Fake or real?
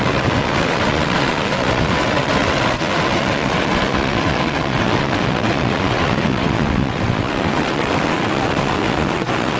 fake